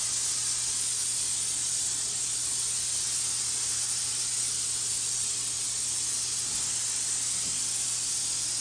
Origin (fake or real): real